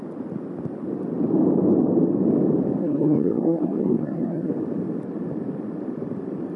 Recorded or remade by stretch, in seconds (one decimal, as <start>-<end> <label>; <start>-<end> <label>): 0.0-2.8 recorded; 2.8-4.5 remade; 4.5-6.6 recorded